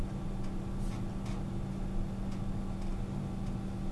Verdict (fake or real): real